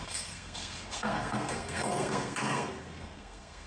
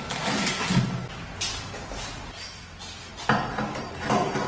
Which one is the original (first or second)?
second